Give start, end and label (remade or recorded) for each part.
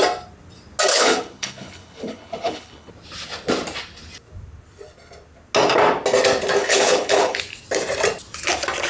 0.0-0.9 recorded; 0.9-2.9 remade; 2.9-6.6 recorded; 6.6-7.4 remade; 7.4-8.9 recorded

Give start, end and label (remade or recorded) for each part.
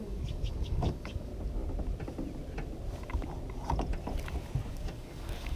0.0-1.3 remade; 1.3-4.7 recorded; 4.7-5.6 remade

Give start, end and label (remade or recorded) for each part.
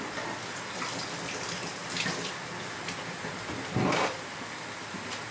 0.0-5.3 recorded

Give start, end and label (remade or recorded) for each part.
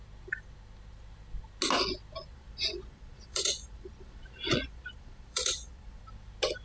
0.0-2.3 recorded; 2.3-6.0 remade; 6.0-6.6 recorded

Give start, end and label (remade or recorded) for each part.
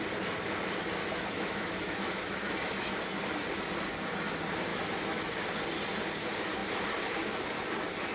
0.0-1.0 recorded; 1.0-2.9 remade; 2.9-4.7 recorded; 4.7-5.3 remade; 5.3-8.1 recorded